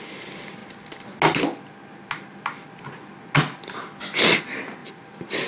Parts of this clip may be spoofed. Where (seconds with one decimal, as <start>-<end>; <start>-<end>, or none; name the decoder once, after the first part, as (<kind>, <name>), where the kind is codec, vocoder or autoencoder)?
4.8-5.5 (vocoder, BigVGAN v2)